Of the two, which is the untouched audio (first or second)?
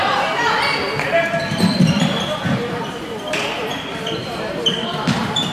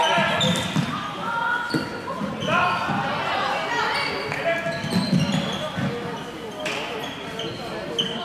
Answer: second